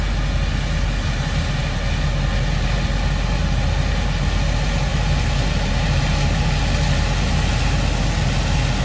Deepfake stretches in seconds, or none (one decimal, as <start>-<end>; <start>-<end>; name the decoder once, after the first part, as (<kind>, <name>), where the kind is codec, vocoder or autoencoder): none